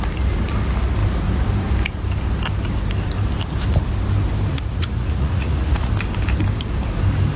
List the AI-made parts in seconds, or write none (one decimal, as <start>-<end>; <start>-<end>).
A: 4.5-5.9